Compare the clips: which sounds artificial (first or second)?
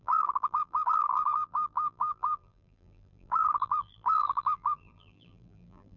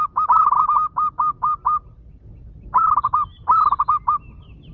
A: first